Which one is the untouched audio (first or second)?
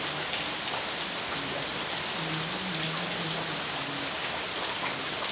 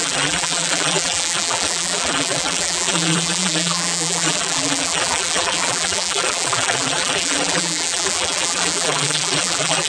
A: first